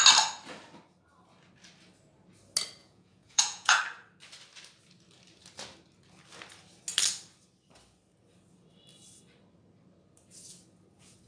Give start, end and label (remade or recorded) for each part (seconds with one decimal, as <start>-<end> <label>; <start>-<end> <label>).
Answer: 0.0-2.8 recorded; 2.8-3.8 remade; 3.8-11.3 recorded